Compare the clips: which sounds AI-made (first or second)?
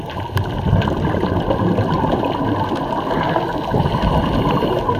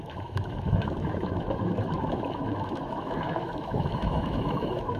second